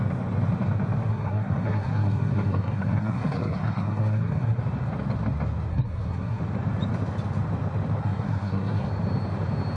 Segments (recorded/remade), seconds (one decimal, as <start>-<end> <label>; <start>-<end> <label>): 0.0-1.1 recorded; 1.1-4.6 remade; 4.6-5.7 recorded; 5.7-6.4 remade; 6.4-8.0 recorded; 8.0-8.9 remade; 8.9-9.8 recorded